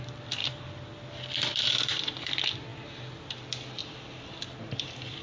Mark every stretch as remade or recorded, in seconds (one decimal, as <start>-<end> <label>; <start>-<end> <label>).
0.0-5.2 recorded